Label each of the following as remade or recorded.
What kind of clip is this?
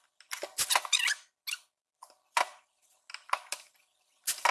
recorded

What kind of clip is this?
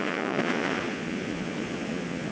remade